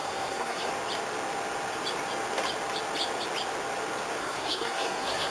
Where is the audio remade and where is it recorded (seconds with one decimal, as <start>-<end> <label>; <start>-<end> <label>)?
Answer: 0.0-0.7 remade; 0.7-4.2 recorded; 4.2-5.3 remade